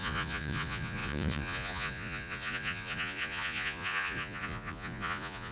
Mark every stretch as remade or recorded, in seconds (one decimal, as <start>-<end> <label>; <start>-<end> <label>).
0.0-5.5 remade